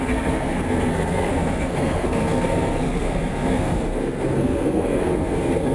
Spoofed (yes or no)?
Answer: yes